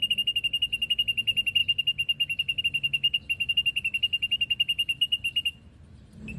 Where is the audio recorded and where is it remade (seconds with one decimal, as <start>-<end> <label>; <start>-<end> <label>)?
0.0-6.4 recorded